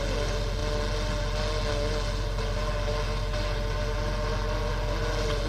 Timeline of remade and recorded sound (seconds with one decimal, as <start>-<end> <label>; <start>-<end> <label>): 0.0-5.5 recorded